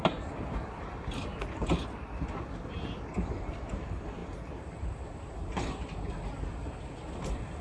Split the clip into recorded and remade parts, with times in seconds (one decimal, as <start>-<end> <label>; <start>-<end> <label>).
0.0-7.6 remade